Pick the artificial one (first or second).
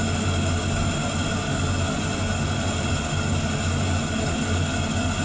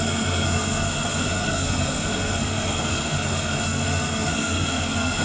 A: second